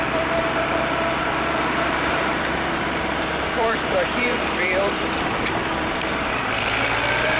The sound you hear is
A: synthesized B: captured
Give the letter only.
A